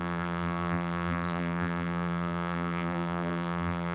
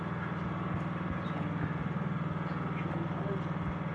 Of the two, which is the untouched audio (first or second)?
second